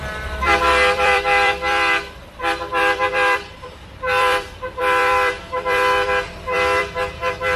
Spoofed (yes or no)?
yes